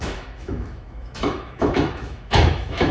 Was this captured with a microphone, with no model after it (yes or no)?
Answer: no